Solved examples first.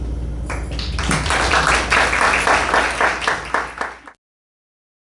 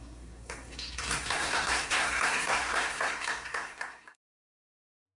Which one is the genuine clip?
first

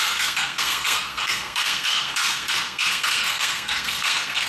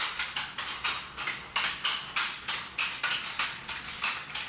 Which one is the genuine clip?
second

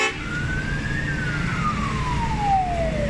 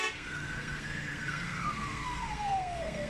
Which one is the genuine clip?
first